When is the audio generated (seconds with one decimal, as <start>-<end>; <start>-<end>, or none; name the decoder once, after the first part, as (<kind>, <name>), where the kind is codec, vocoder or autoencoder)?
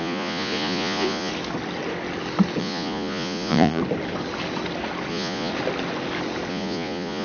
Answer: 0.0-1.3 (vocoder, Vocos); 2.6-3.8; 5.1-5.5; 6.5-7.2